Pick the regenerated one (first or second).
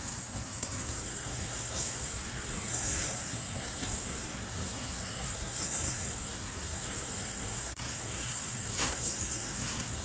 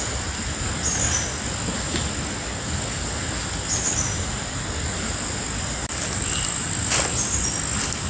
first